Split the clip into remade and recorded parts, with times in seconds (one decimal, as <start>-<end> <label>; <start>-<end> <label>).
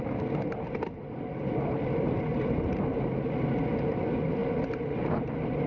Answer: 0.0-5.7 recorded